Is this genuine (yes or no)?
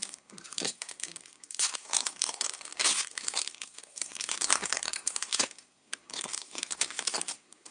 no